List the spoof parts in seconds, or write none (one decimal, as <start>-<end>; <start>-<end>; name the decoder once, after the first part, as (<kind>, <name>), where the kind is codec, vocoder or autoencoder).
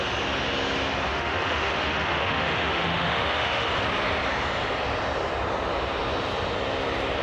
1.1-3.7 (autoencoder, DAC-VAE)